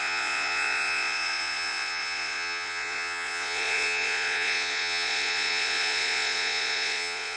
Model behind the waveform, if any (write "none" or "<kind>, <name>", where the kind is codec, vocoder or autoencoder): vocoder, Vocos